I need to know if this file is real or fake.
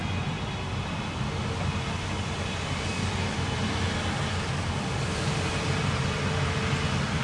real